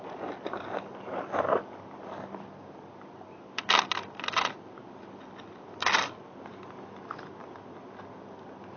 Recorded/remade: recorded